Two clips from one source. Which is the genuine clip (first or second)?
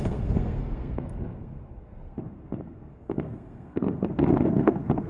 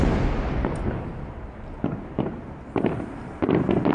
second